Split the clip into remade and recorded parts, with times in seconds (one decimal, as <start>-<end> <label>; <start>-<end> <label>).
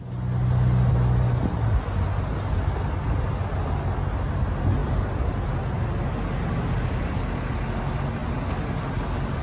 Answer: 0.0-9.4 recorded